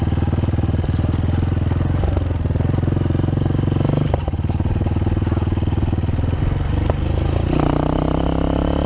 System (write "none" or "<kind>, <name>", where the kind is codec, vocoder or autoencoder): none